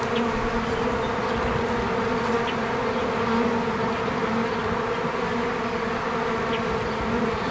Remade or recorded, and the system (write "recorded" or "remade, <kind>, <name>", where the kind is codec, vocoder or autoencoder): recorded